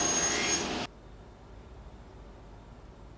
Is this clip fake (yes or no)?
no